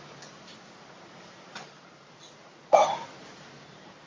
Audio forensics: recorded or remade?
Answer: recorded